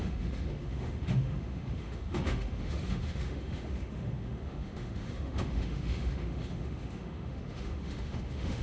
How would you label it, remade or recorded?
remade